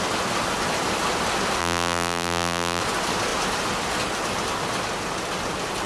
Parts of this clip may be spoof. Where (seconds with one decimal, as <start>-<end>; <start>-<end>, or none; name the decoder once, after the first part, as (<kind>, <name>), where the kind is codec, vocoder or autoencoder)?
1.6-2.8 (vocoder, BigVGAN v2)